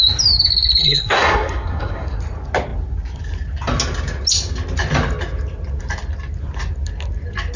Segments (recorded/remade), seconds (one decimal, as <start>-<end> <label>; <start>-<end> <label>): 0.0-0.8 recorded; 0.8-2.2 remade; 2.2-7.6 recorded